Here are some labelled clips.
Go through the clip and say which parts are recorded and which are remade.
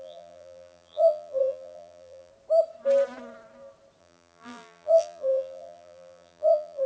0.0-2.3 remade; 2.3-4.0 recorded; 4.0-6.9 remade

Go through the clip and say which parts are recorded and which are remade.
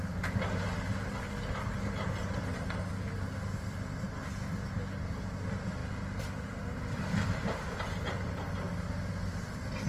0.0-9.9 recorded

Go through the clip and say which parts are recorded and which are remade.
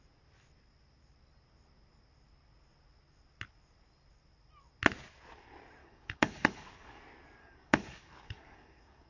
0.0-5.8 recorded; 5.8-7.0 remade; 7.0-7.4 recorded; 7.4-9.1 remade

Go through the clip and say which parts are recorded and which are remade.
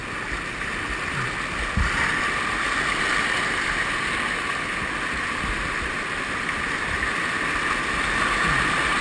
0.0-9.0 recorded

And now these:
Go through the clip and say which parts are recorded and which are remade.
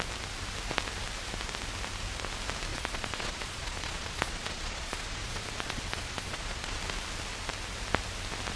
0.0-2.7 recorded; 2.7-6.8 remade; 6.8-8.6 recorded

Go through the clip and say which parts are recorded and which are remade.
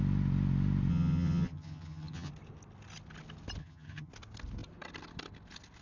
0.0-0.9 recorded; 0.9-2.3 remade; 2.3-3.6 recorded; 3.6-4.1 remade; 4.1-5.8 recorded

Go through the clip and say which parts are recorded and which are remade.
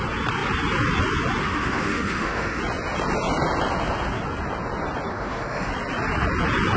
0.0-1.4 recorded; 1.4-2.6 remade; 2.6-5.1 recorded; 5.1-5.7 remade; 5.7-6.8 recorded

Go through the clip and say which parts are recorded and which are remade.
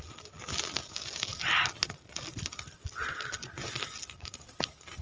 0.0-5.0 recorded